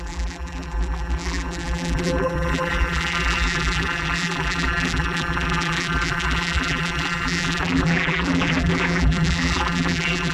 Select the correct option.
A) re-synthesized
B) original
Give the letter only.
A